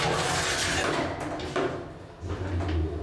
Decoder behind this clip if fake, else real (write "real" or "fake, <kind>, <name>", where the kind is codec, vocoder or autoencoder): real